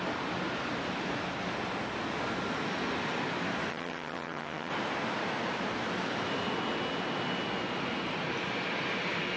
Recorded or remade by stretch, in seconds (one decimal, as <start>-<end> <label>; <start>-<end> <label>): 0.0-3.7 recorded; 3.7-4.7 remade; 4.7-9.4 recorded